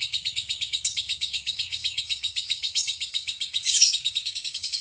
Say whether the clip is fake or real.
fake